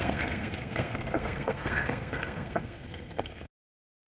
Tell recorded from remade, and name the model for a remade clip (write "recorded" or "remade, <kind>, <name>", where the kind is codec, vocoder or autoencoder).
remade, codec, SNAC